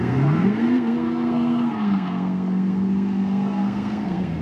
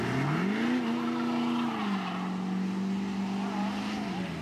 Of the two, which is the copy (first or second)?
first